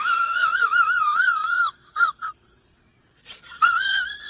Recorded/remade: remade